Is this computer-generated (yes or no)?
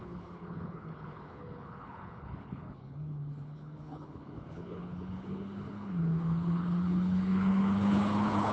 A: yes